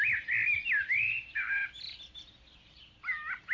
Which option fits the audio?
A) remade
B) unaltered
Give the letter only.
B